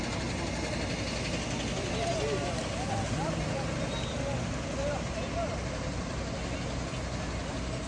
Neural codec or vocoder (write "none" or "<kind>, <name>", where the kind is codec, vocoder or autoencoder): none